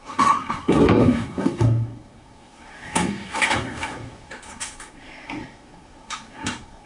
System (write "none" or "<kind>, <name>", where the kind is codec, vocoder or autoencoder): codec, SNAC